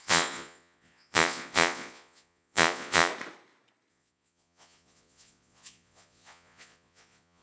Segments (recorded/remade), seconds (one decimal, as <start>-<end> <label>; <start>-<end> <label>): 0.0-3.1 remade; 3.1-3.9 recorded; 3.9-7.4 remade